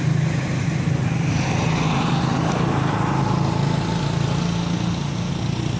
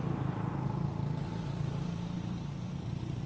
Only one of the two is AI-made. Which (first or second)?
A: second